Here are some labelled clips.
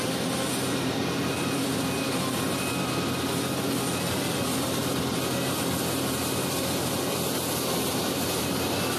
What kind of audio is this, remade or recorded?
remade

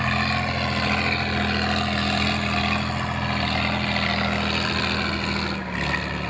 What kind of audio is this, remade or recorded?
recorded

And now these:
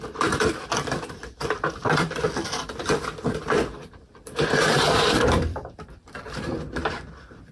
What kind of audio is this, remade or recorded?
remade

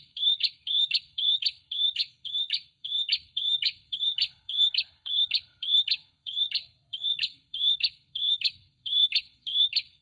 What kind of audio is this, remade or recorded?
remade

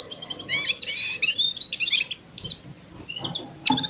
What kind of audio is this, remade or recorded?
recorded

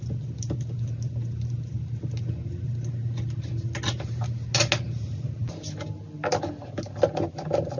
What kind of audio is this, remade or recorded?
recorded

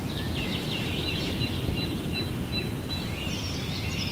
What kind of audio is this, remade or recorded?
recorded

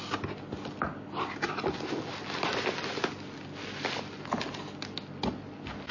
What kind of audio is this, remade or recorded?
recorded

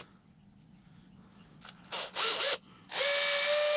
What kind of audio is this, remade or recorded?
recorded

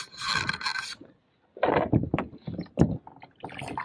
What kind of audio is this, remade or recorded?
recorded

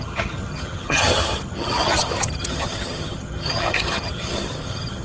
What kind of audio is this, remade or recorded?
remade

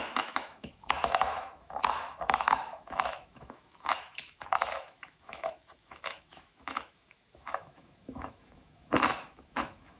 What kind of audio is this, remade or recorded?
remade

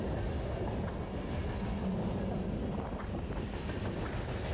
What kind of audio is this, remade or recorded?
recorded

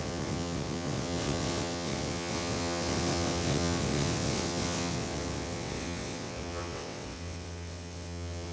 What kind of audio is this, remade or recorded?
remade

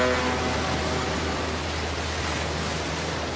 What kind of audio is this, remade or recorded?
recorded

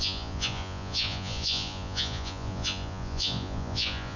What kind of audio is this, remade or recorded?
remade